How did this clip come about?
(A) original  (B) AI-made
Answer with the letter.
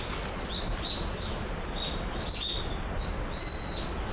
A